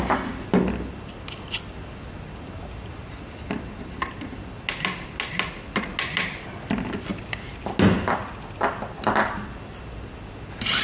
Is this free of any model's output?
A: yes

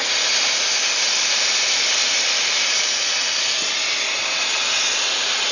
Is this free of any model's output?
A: yes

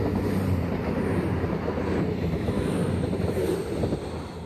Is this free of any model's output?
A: yes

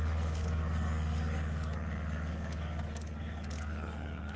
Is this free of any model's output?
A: no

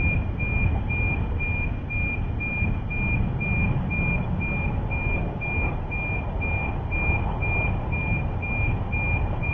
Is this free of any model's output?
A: yes